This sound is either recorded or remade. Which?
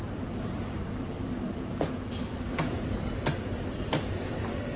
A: remade